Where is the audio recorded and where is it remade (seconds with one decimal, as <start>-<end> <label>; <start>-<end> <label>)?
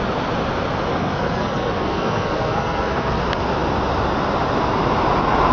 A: 0.0-0.9 recorded; 0.9-3.2 remade; 3.2-5.5 recorded